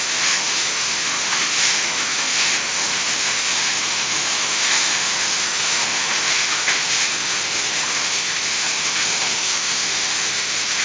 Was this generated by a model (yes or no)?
yes